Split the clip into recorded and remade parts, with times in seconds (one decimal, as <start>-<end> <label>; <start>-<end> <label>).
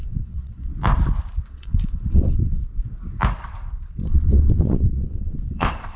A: 0.0-0.7 remade; 0.7-1.5 recorded; 1.5-2.6 remade; 2.6-3.9 recorded; 3.9-6.0 remade